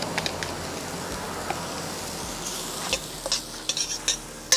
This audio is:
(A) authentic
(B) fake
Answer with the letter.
A